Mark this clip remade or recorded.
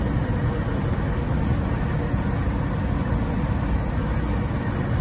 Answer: recorded